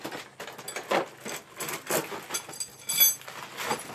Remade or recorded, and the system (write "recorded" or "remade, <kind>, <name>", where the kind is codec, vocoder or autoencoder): recorded